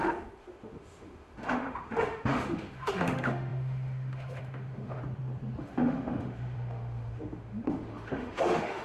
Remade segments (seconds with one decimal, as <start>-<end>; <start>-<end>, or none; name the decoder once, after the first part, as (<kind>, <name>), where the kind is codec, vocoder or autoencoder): 0.0-5.0 (autoencoder, DAC-VAE); 5.6-8.8